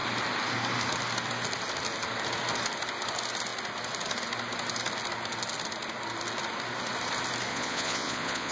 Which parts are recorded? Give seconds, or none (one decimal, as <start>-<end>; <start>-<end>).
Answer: 0.0-7.5